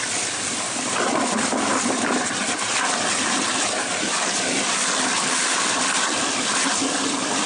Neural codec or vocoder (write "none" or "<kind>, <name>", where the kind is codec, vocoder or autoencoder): vocoder, BigVGAN v2